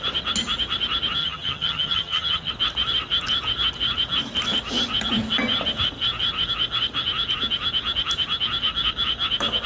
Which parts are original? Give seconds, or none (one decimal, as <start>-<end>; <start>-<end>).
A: 0.0-1.2; 2.5-9.7

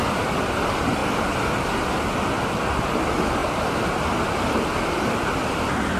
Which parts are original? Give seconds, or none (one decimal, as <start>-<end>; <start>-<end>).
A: 0.0-6.0

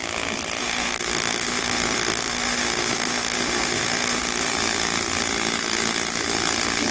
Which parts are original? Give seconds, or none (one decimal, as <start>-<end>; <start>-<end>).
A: 0.0-0.6; 4.5-6.9

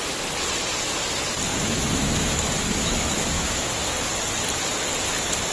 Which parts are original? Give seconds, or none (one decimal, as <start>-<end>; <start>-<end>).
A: 0.0-1.5; 3.7-5.5